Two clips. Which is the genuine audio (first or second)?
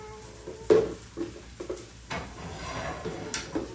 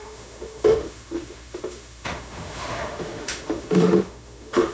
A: first